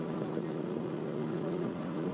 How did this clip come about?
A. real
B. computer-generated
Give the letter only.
B